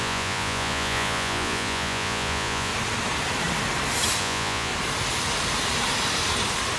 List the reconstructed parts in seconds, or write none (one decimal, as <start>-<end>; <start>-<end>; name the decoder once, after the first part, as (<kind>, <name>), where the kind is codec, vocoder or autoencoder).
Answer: 0.0-2.7 (vocoder, Vocos); 4.2-4.7